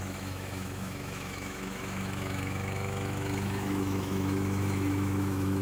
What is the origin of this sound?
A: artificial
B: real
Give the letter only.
A